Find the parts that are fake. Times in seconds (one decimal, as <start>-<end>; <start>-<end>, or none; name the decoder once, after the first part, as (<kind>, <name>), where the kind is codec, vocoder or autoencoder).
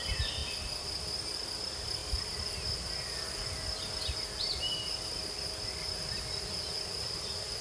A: 0.0-0.4 (vocoder, BigVGAN v2); 1.6-2.0; 6.6-7.6